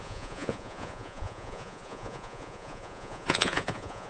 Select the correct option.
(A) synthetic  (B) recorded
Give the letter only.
A